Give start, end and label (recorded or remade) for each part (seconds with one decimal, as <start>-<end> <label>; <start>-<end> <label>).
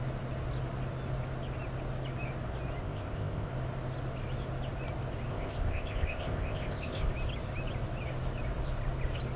0.0-2.8 recorded; 2.8-3.5 remade; 3.5-5.3 recorded; 5.3-7.1 remade; 7.1-9.4 recorded